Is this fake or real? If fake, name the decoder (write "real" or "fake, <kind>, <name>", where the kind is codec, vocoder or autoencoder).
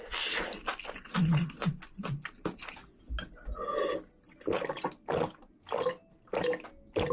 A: real